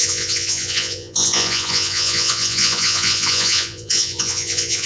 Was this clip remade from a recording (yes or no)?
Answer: yes